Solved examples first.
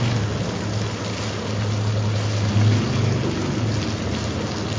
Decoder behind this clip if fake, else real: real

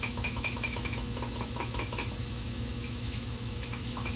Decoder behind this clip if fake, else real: fake, autoencoder, DAC-VAE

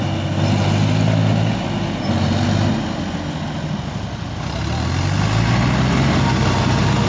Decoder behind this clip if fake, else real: real